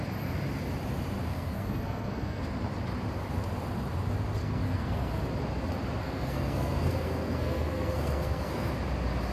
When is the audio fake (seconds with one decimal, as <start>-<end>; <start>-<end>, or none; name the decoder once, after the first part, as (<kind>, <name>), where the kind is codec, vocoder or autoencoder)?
1.3-2.4 (codec, SNAC); 4.4-5.1; 6.0-8.7